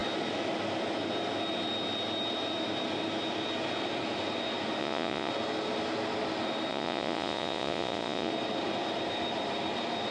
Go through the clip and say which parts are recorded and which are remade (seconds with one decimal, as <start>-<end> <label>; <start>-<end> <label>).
0.0-4.8 recorded; 4.8-5.3 remade; 5.3-6.7 recorded; 6.7-8.3 remade; 8.3-10.1 recorded